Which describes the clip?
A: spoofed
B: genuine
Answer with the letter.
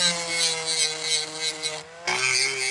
B